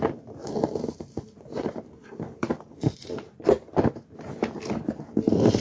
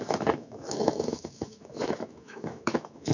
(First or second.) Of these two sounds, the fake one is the second